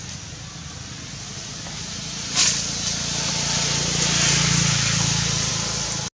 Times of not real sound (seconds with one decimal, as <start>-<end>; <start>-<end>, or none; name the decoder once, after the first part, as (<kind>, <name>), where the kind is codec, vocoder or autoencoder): none